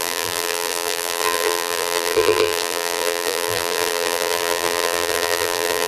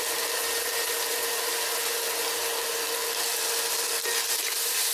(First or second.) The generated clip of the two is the first